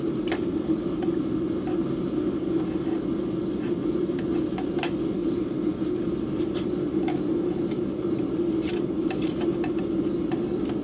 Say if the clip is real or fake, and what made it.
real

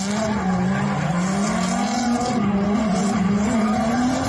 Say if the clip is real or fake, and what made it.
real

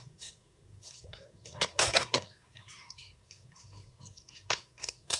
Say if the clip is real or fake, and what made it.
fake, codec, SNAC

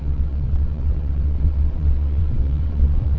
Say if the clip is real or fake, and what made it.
fake, vocoder, WaveNeXt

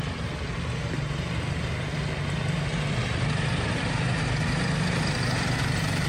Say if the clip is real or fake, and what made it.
real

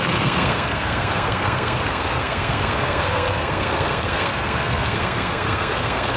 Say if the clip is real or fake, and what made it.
fake, codec, SNAC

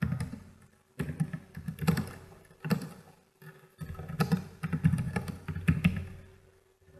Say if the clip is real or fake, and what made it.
real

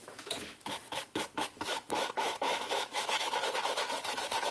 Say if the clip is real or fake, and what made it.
fake, autoencoder, DAC-VAE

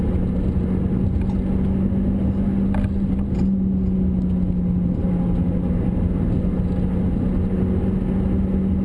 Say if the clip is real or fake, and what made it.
real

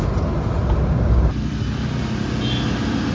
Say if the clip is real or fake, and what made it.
real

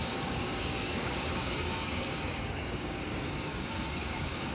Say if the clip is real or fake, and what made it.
fake, codec, DAC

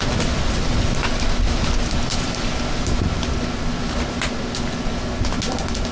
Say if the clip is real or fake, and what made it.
real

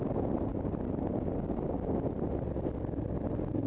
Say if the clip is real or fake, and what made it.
real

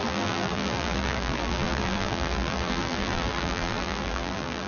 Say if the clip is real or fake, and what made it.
fake, vocoder, BigVGAN v2